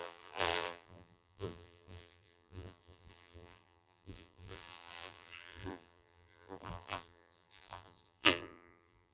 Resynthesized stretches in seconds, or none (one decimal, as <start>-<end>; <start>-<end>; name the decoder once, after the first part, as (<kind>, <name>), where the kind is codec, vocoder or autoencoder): 0.0-9.1 (vocoder, BigVGAN v2)